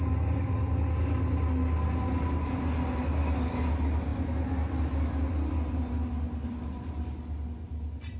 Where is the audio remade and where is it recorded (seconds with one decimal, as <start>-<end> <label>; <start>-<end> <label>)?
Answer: 0.0-8.2 recorded